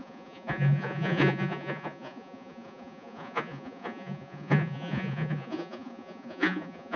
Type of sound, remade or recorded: remade